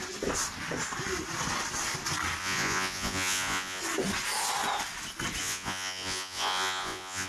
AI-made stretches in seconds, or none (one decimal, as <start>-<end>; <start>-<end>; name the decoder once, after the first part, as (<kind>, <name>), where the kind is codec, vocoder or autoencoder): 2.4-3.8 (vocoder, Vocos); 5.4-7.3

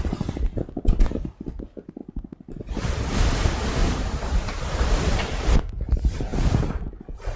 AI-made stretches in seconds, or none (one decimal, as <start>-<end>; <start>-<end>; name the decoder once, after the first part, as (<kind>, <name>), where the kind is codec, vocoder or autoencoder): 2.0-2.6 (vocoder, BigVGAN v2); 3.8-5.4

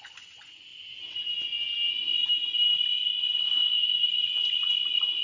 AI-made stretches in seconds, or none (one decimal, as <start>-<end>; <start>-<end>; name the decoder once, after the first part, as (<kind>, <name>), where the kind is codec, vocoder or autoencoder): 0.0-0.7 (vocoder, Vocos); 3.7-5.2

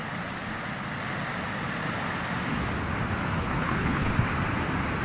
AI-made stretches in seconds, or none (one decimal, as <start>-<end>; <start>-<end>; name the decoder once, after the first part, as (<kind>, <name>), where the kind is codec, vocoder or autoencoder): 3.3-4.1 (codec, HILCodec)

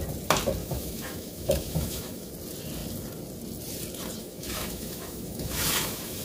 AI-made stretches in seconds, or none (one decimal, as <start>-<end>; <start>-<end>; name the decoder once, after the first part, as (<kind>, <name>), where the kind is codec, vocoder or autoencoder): 0.6-2.3 (autoencoder, DAC-VAE); 4.2-6.2

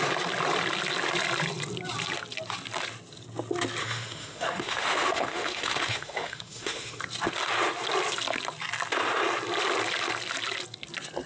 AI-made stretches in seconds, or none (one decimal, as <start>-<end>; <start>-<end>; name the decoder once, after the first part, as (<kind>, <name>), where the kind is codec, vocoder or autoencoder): 3.8-7.0 (autoencoder, DAC-VAE)